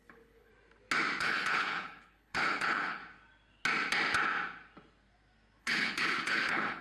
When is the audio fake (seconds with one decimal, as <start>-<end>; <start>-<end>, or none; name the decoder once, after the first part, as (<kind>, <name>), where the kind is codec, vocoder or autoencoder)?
0.0-0.5 (codec, HILCodec); 1.2-3.0; 5.6-6.8